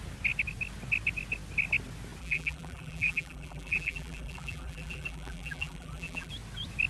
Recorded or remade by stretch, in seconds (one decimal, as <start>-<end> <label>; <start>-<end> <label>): 0.0-2.2 recorded; 2.2-6.3 remade; 6.3-6.9 recorded